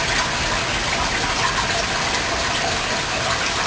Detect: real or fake real